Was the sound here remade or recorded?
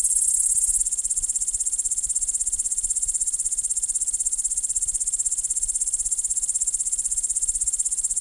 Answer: recorded